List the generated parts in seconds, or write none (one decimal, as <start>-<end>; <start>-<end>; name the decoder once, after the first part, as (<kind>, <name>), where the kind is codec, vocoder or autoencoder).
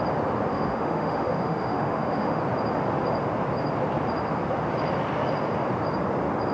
0.5-2.4 (autoencoder, DAC-VAE)